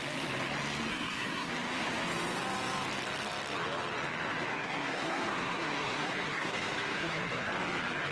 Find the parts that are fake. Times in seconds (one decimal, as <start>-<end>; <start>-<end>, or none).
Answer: 0.9-1.5; 4.5-7.5